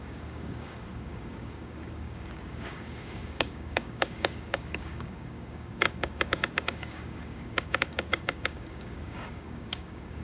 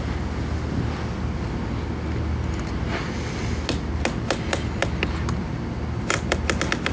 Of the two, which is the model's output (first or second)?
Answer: first